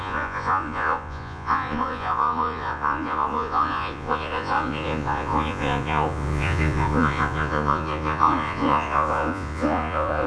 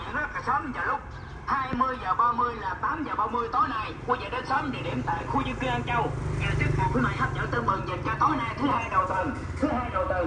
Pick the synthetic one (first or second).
first